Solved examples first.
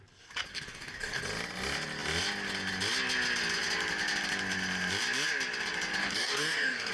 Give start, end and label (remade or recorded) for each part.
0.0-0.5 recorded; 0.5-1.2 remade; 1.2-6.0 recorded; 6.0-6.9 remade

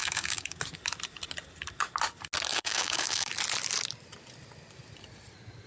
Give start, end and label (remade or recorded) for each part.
0.0-0.6 remade; 0.6-2.5 recorded; 2.5-3.3 remade; 3.3-5.7 recorded